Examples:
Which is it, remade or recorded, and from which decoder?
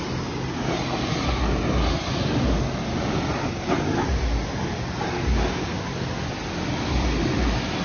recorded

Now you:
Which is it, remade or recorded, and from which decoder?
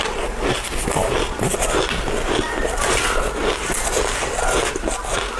recorded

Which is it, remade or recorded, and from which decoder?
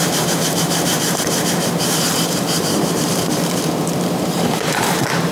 remade, vocoder, BigVGAN v2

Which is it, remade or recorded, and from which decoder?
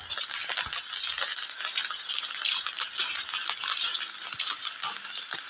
recorded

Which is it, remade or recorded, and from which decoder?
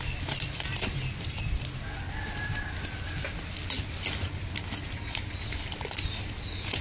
recorded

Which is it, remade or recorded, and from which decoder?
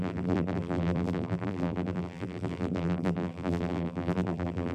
remade, vocoder, BigVGAN v2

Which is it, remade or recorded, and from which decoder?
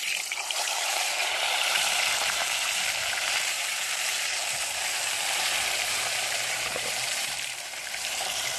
remade, vocoder, BigVGAN v2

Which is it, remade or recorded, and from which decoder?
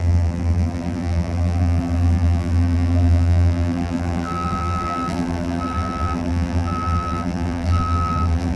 remade, vocoder, BigVGAN v2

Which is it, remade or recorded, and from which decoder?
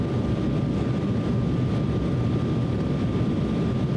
recorded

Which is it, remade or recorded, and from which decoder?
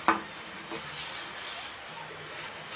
recorded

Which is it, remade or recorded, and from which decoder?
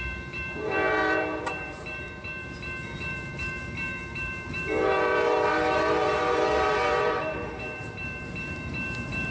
remade, vocoder, BigVGAN v2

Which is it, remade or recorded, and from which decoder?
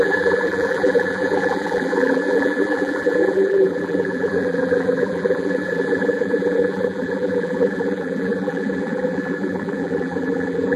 remade, vocoder, BigVGAN v2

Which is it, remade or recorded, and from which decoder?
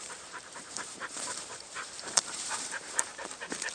remade, vocoder, BigVGAN v2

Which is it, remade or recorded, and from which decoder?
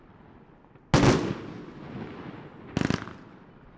recorded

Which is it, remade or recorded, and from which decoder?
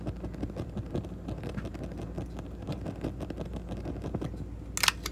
recorded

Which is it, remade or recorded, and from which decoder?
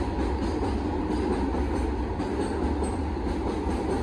recorded